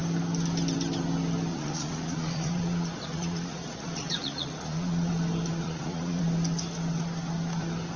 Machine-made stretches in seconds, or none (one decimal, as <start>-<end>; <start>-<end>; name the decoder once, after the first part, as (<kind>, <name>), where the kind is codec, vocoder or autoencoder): 1.5-5.1 (vocoder, Vocos); 5.6-6.2

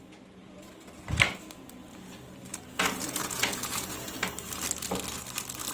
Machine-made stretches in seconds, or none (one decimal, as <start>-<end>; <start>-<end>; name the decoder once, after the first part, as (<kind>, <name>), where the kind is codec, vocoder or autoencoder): 0.4-0.9 (vocoder, Vocos); 2.5-4.2

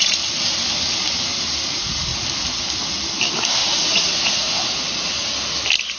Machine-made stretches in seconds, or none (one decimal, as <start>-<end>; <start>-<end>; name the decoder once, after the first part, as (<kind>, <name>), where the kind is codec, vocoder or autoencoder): 3.6-4.5 (vocoder, Vocos)

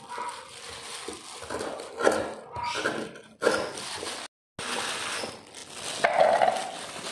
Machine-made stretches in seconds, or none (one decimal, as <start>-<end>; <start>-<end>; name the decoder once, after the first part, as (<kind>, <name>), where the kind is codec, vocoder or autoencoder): none

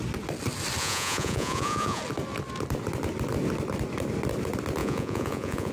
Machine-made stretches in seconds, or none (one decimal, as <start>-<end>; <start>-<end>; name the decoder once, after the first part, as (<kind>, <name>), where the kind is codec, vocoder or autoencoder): 0.8-2.0 (vocoder, Vocos); 4.8-5.7

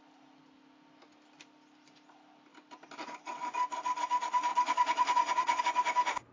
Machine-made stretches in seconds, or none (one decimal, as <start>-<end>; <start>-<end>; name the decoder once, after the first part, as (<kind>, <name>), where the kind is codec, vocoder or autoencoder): 4.5-5.6 (vocoder, Vocos)

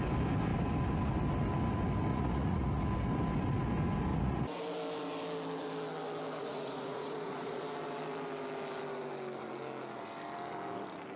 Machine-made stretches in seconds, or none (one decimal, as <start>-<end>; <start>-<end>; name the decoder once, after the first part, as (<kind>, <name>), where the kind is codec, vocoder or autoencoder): 2.1-2.8 (vocoder, Vocos); 4.1-4.6; 6.4-7.6

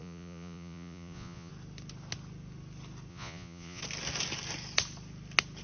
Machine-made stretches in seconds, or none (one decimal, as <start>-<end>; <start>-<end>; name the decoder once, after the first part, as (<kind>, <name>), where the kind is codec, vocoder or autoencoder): 0.0-1.5 (vocoder, Vocos); 3.1-3.8